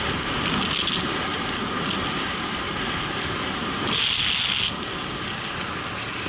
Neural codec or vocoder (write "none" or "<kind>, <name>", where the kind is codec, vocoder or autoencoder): none